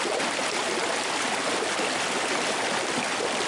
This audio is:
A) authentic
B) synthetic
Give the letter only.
A